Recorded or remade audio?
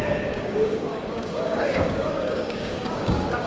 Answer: remade